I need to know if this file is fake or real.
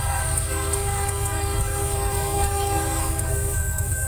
fake